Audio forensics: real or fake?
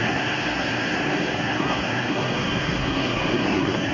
fake